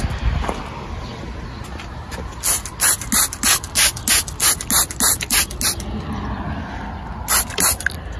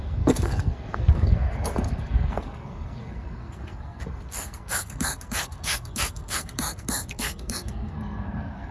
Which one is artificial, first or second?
second